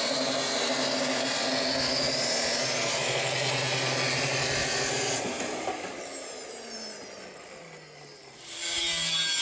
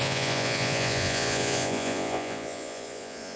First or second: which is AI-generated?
second